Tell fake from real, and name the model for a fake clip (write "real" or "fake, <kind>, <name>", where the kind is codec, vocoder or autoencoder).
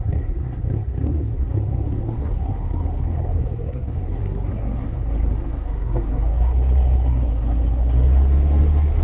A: fake, codec, SNAC